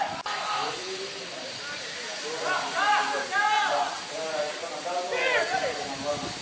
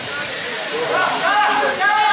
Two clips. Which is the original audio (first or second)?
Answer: first